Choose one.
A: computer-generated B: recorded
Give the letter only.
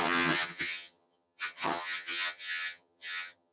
A